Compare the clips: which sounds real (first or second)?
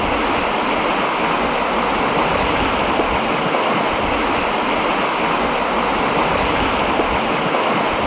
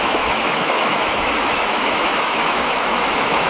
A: first